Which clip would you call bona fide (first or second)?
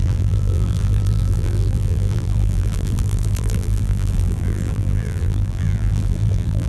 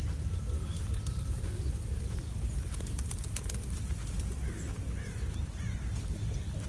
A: second